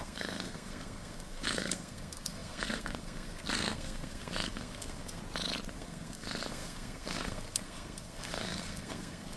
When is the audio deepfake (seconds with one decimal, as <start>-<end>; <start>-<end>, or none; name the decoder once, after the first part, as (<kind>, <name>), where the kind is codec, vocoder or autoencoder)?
0.0-5.2 (codec, SNAC); 5.7-9.4